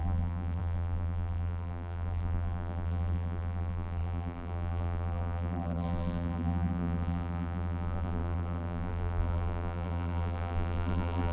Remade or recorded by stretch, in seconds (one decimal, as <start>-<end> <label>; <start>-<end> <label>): 0.0-11.3 remade

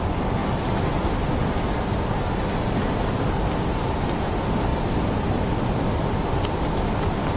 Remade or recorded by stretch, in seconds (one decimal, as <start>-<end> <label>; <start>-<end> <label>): 0.0-0.4 recorded; 0.4-1.1 remade; 1.1-7.4 recorded